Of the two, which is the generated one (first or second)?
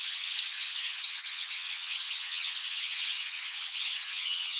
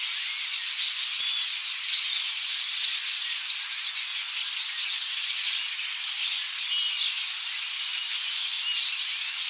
first